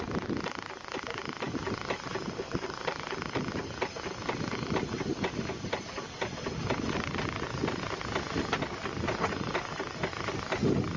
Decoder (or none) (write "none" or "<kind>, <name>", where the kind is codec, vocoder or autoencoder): none